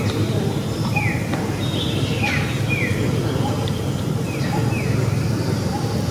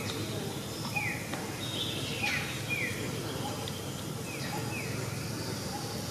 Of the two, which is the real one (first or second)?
second